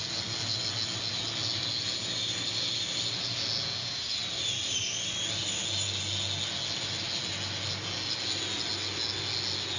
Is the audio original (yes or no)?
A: yes